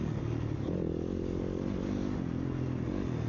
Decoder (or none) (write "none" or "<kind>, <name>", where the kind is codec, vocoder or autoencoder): none